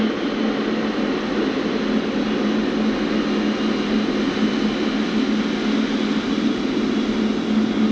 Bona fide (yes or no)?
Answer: yes